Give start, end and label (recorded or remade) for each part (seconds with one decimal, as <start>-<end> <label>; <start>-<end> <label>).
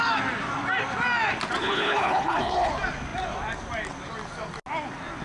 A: 0.0-1.6 recorded; 1.6-2.7 remade; 2.7-5.2 recorded